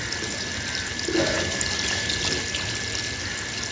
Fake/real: real